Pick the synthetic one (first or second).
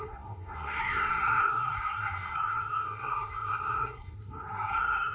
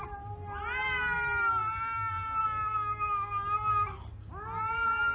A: first